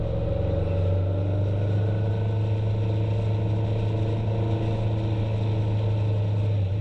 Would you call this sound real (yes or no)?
yes